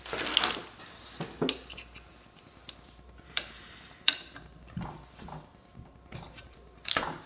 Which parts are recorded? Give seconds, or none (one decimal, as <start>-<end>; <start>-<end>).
0.0-2.6